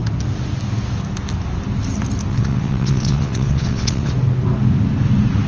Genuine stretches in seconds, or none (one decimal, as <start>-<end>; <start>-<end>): 0.0-2.3; 4.1-5.5